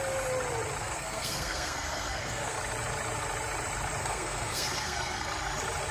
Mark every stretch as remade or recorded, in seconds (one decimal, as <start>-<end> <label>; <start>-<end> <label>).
0.0-0.8 recorded; 0.8-2.6 remade; 2.6-4.0 recorded; 4.0-5.3 remade; 5.3-5.9 recorded